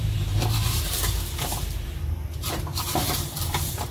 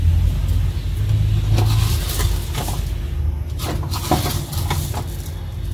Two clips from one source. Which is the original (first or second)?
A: second